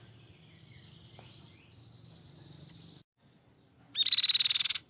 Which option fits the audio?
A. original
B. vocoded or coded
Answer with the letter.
A